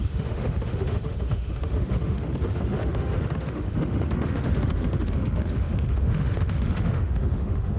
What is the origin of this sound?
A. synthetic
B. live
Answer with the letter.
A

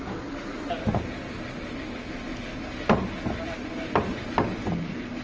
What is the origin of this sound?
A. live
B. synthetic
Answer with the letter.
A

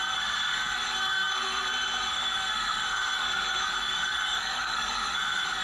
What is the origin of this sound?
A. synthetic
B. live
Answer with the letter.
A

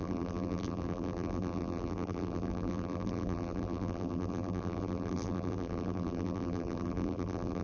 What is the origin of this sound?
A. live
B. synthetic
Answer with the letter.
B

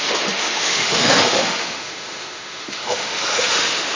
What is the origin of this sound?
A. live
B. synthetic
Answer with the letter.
B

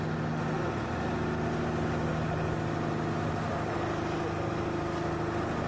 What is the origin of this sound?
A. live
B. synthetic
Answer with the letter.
A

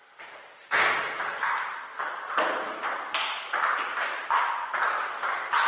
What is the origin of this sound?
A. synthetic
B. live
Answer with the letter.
B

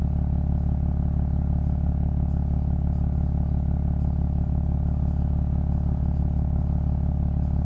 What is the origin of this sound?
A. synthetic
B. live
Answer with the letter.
B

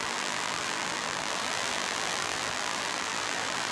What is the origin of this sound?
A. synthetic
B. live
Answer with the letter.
A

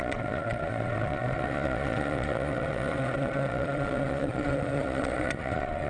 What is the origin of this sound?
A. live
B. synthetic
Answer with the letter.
B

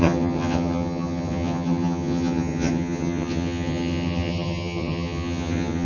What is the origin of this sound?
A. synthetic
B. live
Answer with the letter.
A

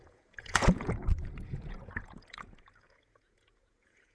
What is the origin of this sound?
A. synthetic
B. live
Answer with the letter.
A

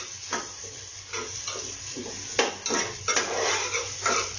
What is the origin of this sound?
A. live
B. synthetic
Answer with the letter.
A